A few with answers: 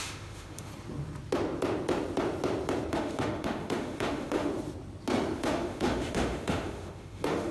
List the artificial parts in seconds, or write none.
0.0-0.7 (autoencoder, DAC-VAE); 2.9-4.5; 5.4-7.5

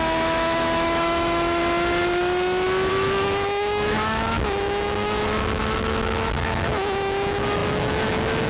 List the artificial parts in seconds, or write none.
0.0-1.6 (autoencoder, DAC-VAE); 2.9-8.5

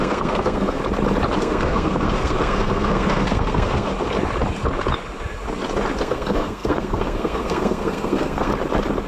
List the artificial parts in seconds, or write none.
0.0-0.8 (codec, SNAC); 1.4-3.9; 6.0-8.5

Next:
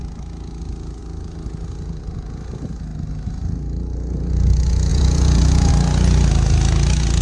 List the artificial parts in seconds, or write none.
4.9-5.7 (vocoder, Vocos)

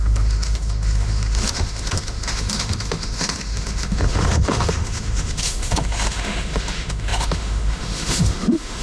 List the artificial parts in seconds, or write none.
0.0-8.8 (autoencoder, DAC-VAE)